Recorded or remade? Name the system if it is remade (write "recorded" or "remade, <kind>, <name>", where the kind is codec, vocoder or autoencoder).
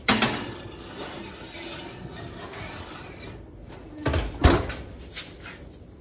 recorded